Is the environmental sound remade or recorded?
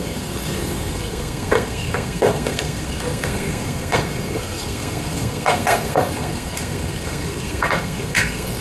remade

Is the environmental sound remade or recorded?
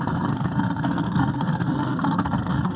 remade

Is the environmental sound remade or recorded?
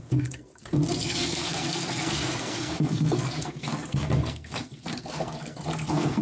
remade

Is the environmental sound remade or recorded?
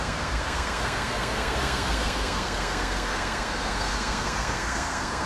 remade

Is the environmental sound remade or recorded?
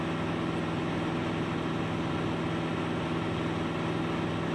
recorded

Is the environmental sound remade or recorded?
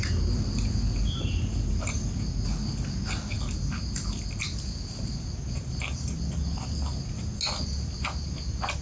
recorded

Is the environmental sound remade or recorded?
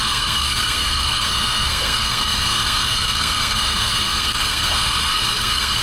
remade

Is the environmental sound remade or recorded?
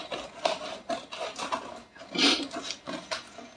recorded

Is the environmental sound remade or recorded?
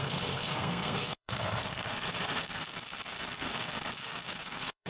remade